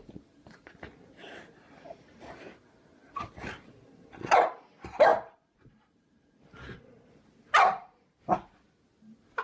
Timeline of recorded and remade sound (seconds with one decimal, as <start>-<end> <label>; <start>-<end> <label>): 0.0-5.1 recorded; 5.1-7.1 remade; 7.1-9.4 recorded